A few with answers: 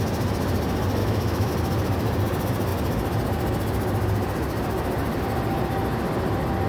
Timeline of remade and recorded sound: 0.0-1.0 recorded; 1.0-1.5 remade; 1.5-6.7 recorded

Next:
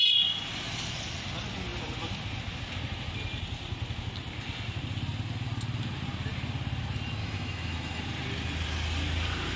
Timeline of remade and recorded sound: 0.0-7.2 recorded; 7.2-8.0 remade; 8.0-9.6 recorded

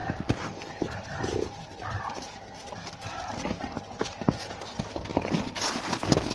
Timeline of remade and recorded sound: 0.0-6.3 recorded

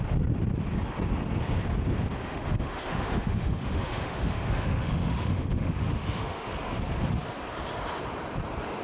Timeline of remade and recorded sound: 0.0-2.2 recorded; 2.2-6.5 remade; 6.5-8.8 recorded

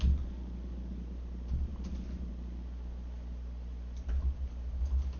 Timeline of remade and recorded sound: 0.0-5.2 recorded

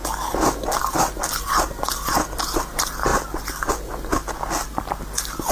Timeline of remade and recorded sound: 0.0-5.5 recorded